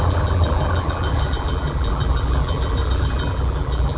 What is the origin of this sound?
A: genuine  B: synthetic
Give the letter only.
B